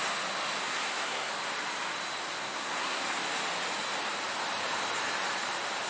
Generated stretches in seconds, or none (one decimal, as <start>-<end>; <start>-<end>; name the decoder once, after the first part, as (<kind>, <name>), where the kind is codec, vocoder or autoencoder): 0.6-1.3 (codec, SNAC); 2.4-3.0